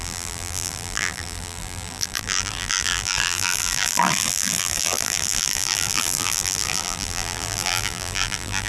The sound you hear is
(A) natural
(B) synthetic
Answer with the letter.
B